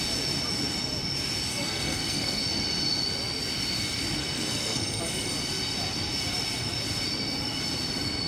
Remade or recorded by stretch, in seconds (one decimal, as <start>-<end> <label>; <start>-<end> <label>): 0.0-1.5 recorded; 1.5-2.4 remade; 2.4-4.2 recorded; 4.2-5.0 remade; 5.0-8.3 recorded